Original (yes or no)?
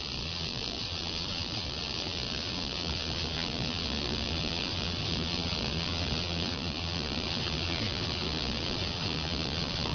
no